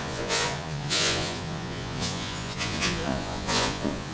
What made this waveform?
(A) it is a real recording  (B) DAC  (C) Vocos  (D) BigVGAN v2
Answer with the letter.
C